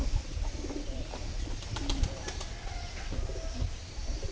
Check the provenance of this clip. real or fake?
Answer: real